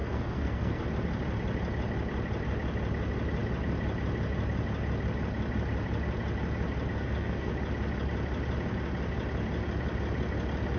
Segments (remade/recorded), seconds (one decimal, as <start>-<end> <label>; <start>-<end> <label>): 0.0-0.8 remade; 0.8-6.9 recorded; 6.9-7.5 remade; 7.5-10.8 recorded